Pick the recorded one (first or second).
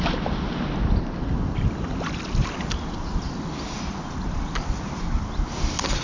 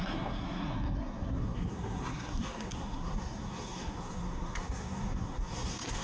first